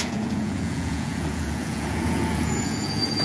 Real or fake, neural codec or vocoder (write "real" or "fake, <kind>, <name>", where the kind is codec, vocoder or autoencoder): fake, vocoder, Vocos